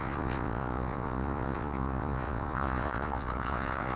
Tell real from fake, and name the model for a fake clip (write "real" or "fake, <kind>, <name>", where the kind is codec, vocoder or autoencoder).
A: fake, vocoder, Vocos